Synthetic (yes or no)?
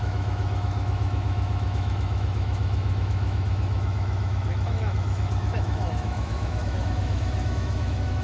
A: yes